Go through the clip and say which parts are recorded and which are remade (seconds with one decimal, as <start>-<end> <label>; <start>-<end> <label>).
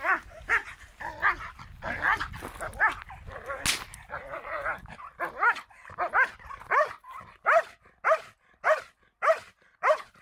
0.0-10.2 recorded